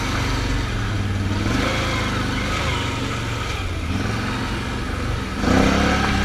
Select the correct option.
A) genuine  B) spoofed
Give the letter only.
A